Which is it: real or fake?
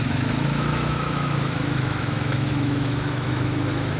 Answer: fake